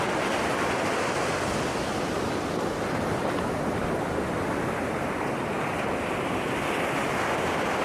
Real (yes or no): yes